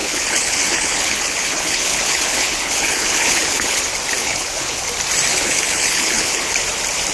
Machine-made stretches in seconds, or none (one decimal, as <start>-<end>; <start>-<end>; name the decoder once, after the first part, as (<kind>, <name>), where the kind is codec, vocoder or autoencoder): 0.0-3.8 (codec, HILCodec); 4.2-4.8; 5.3-6.5